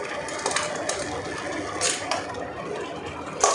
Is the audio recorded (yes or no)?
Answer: yes